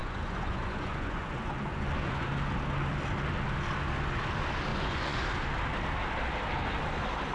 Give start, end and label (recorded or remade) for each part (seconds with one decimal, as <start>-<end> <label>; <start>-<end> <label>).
0.0-2.3 remade; 2.3-4.7 recorded; 4.7-5.2 remade; 5.2-7.3 recorded